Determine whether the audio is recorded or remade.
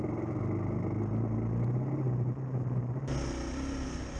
recorded